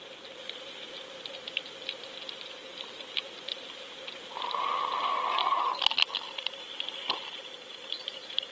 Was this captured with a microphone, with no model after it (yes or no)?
yes